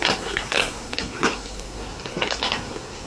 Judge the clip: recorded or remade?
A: remade